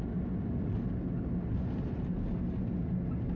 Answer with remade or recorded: recorded